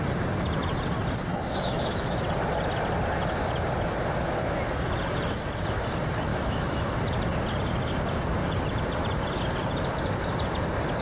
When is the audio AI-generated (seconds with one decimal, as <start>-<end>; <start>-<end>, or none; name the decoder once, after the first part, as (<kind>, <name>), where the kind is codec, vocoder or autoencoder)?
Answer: 1.3-2.2 (autoencoder, DAC-VAE); 6.3-6.9